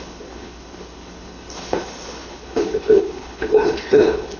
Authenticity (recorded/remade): remade